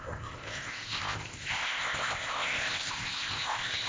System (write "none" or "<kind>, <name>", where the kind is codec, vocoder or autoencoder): codec, ZipCodec